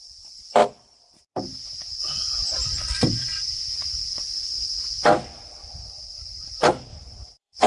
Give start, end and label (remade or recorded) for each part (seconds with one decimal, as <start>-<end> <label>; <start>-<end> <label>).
0.0-3.3 remade; 3.3-4.0 recorded; 4.0-4.7 remade; 4.7-5.6 recorded; 5.6-7.7 remade